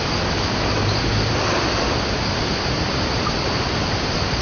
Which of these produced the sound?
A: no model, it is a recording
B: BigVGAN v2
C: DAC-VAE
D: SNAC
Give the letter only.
A